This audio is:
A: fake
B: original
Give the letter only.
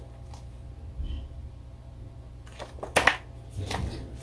B